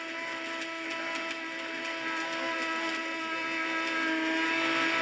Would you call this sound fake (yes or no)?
no